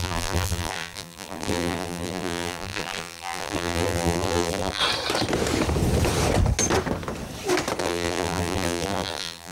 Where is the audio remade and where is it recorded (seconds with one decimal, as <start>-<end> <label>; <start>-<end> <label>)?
0.0-4.8 remade; 4.8-7.8 recorded; 7.8-9.5 remade